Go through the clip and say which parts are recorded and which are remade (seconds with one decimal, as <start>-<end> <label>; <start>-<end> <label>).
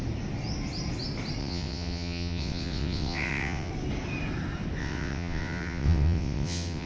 0.0-1.4 recorded; 1.4-3.7 remade; 3.7-4.8 recorded; 4.8-6.9 remade